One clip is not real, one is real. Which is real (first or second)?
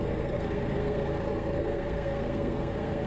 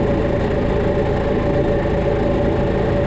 second